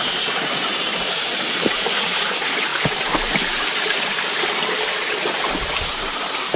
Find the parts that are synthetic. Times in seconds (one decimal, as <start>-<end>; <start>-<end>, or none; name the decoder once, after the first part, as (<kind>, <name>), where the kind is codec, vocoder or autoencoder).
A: 0.0-2.7 (vocoder, BigVGAN v2); 5.9-6.6